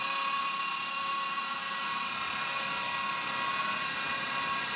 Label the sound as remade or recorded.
recorded